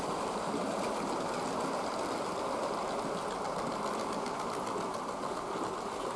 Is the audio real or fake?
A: real